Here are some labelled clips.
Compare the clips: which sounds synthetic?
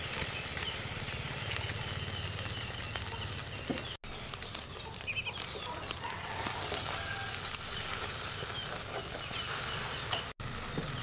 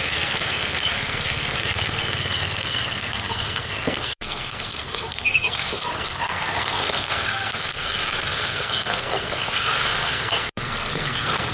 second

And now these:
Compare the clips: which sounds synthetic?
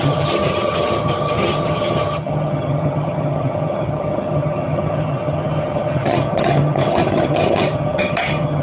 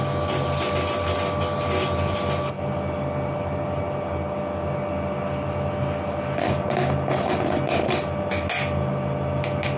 first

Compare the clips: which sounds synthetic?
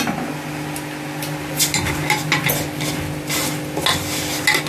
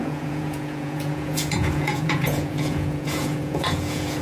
second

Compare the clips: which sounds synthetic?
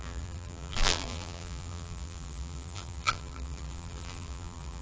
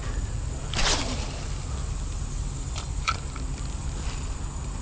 first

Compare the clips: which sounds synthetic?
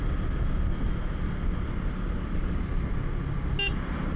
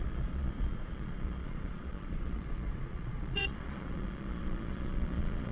second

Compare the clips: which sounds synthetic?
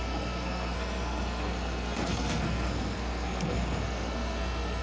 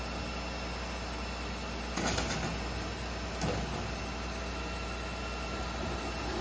first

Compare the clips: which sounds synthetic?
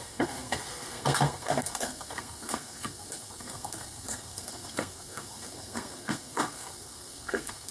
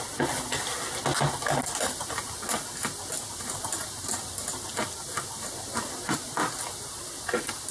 first